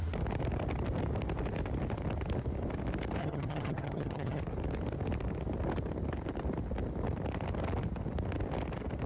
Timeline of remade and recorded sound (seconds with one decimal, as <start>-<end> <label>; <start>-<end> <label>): 0.0-3.2 recorded; 3.2-4.4 remade; 4.4-9.1 recorded